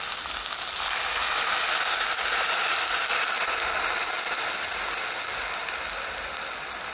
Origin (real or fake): real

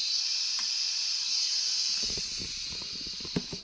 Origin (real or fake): real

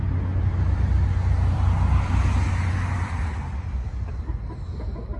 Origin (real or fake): real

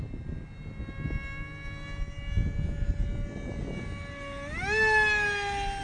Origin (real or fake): real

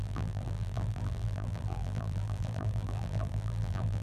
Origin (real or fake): fake